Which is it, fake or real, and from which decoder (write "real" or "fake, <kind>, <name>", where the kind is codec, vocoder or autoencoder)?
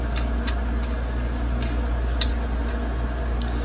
real